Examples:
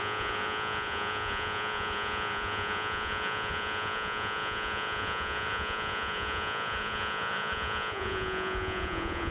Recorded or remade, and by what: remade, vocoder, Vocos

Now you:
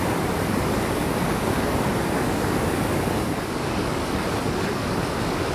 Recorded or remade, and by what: remade, codec, DAC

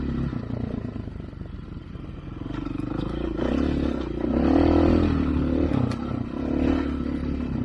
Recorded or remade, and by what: recorded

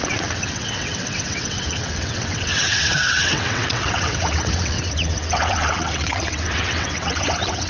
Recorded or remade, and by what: remade, vocoder, WaveNeXt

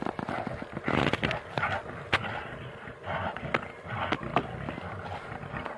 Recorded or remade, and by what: recorded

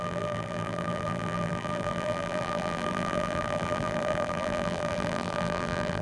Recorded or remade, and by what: remade, vocoder, BigVGAN v2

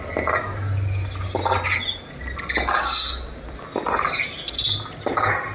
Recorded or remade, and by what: recorded